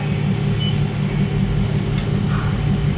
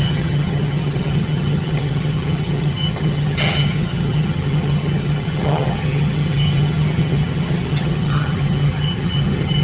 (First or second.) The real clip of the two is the first